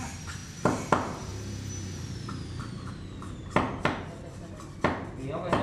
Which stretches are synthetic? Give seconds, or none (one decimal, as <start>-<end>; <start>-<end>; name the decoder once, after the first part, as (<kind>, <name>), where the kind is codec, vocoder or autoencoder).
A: none